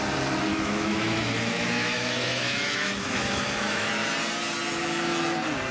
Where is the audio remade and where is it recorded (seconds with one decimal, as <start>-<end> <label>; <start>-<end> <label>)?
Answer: 0.0-0.5 recorded; 0.5-3.9 remade; 3.9-5.7 recorded